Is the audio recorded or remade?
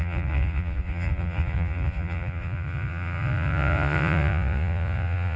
remade